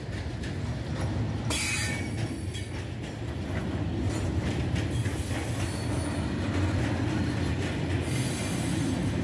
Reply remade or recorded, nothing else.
recorded